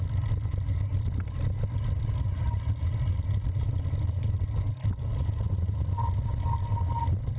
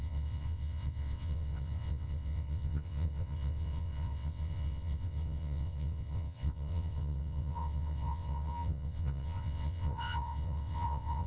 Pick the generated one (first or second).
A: second